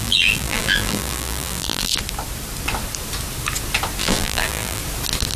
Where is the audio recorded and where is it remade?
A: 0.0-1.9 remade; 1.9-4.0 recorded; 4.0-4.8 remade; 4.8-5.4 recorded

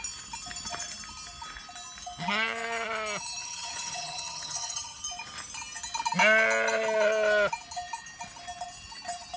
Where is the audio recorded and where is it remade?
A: 0.0-3.4 recorded; 3.4-5.0 remade; 5.0-9.4 recorded

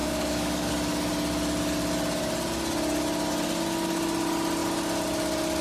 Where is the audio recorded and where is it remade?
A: 0.0-0.7 remade; 0.7-5.6 recorded

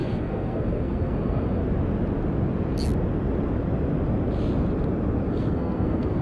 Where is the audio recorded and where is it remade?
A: 0.0-1.6 remade; 1.6-5.3 recorded; 5.3-6.2 remade